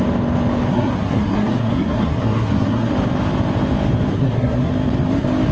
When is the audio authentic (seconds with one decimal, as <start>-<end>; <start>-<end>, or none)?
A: 0.0-0.7; 2.9-4.1; 4.7-5.5